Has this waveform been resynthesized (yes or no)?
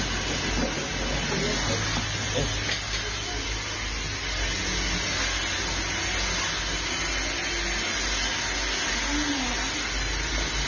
no